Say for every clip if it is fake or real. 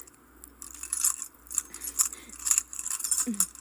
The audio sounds real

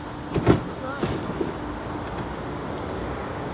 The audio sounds real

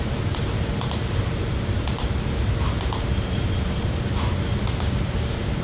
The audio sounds real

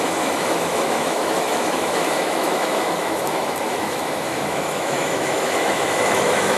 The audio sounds fake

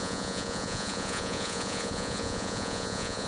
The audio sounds fake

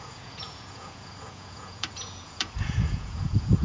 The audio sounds fake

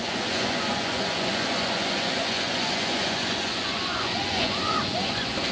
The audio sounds fake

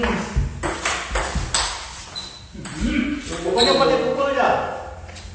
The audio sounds real